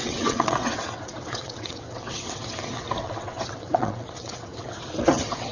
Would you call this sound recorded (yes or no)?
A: no